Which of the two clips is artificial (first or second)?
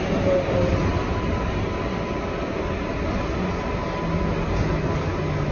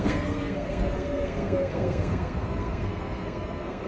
second